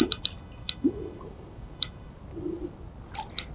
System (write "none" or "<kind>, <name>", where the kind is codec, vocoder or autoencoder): none